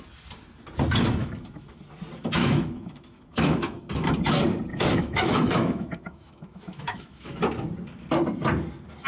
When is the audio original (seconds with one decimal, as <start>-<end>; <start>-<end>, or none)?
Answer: 0.0-1.2; 1.8-2.4; 3.8-4.7; 7.4-9.1